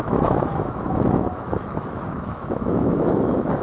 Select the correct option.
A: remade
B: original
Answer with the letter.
A